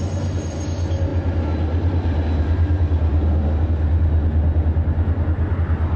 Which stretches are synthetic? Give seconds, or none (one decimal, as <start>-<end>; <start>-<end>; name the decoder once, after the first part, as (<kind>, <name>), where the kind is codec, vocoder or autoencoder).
none